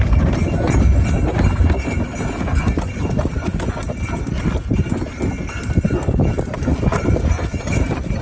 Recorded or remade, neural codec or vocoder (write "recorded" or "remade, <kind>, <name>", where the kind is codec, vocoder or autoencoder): recorded